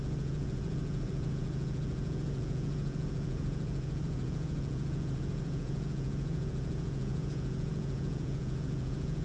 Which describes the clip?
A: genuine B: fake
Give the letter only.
B